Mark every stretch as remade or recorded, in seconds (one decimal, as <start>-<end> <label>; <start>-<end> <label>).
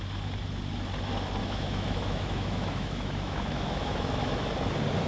0.0-1.4 recorded; 1.4-4.5 remade; 4.5-5.1 recorded